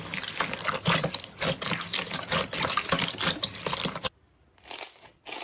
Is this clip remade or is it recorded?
recorded